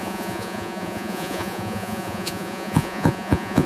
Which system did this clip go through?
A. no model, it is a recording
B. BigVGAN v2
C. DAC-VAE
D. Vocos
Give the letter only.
D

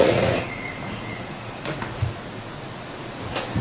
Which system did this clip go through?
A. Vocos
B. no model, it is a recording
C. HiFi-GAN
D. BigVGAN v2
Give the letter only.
A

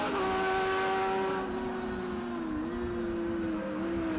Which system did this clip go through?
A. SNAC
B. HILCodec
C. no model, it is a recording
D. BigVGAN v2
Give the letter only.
C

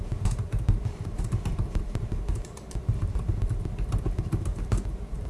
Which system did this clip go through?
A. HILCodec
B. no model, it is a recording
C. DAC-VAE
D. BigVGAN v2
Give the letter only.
D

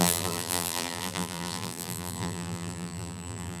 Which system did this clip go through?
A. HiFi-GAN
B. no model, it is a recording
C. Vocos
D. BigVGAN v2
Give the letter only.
D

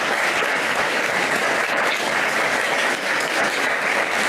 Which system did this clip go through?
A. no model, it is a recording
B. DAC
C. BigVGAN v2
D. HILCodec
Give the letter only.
B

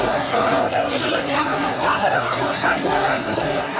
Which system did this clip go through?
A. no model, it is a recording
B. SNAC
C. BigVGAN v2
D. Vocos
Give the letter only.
B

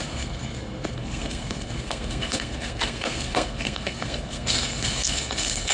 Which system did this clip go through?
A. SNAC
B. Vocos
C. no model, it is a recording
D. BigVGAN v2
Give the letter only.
A